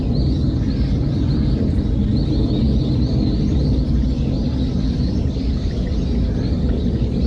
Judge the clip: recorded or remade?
recorded